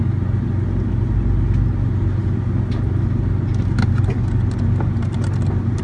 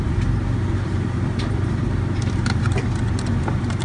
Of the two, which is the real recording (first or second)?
first